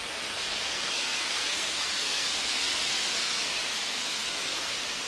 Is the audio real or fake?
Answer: fake